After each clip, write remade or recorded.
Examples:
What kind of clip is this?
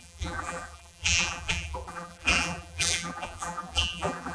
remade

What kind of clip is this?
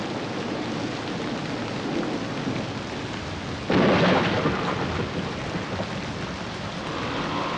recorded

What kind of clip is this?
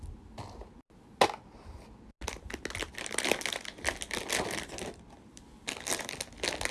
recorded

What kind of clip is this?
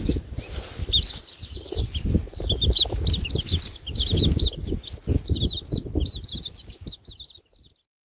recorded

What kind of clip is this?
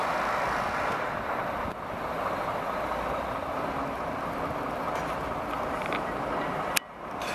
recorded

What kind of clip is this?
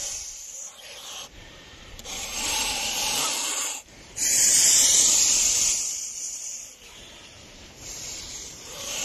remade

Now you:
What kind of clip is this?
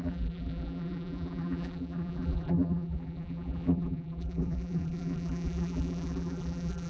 remade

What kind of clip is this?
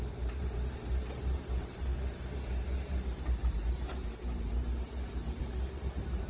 remade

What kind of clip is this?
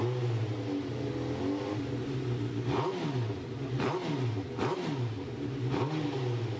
recorded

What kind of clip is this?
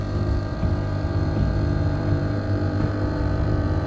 remade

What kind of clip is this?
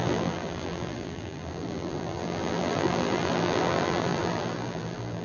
remade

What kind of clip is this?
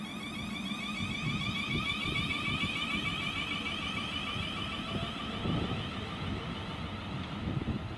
recorded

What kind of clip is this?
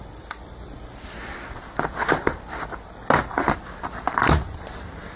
recorded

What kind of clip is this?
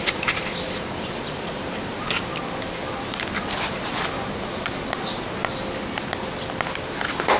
recorded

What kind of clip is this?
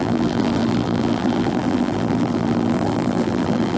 remade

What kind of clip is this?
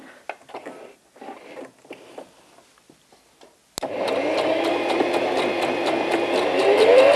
recorded